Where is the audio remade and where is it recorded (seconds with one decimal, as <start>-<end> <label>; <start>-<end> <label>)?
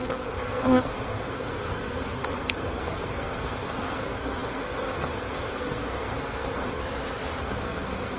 0.0-6.8 remade; 6.8-7.4 recorded; 7.4-8.2 remade